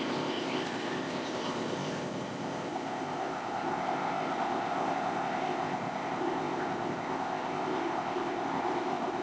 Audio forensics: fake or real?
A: fake